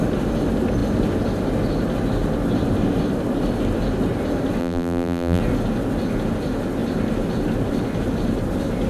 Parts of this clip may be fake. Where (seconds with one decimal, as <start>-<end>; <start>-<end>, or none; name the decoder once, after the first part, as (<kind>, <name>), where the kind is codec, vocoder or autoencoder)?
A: 4.6-5.4 (vocoder, BigVGAN v2)